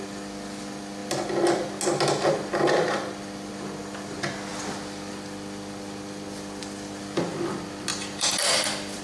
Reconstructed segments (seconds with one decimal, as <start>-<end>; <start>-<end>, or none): 7.9-9.0